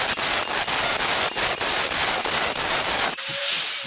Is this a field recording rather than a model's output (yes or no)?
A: yes